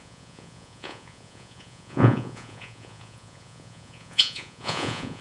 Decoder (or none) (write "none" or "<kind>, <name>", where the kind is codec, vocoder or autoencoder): vocoder, Vocos